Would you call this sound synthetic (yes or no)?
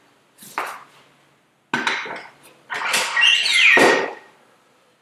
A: no